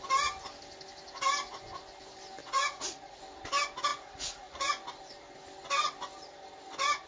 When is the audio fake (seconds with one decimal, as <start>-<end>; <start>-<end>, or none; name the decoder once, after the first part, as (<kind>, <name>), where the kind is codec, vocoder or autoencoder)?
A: 2.4-3.2 (vocoder, Vocos); 3.9-4.7